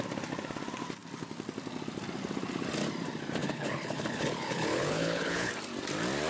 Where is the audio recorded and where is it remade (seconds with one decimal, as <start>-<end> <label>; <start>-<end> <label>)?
0.0-3.4 recorded; 3.4-5.5 remade; 5.5-6.3 recorded